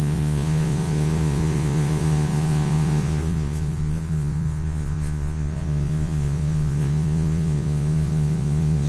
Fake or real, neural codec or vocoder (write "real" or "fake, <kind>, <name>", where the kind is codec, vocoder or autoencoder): fake, vocoder, Vocos